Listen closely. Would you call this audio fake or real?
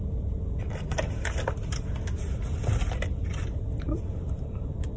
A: real